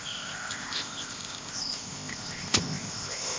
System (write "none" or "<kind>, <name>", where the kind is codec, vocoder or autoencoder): codec, ZipCodec